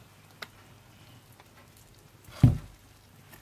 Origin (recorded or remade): recorded